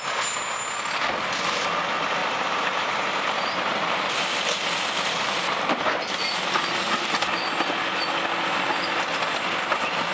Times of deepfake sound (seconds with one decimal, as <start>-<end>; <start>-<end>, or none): 2.2-4.3